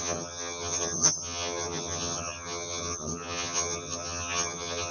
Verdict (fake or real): fake